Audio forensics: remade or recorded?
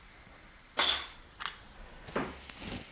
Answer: recorded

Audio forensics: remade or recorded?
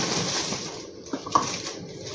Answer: remade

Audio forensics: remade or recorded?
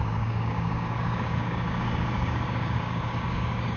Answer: remade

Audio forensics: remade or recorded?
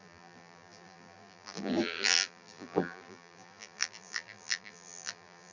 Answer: remade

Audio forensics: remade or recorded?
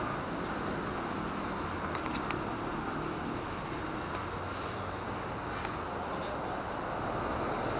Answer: recorded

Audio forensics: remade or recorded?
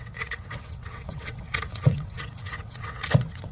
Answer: remade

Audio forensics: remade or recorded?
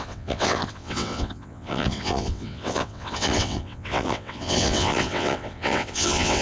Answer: remade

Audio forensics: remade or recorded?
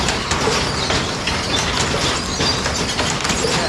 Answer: recorded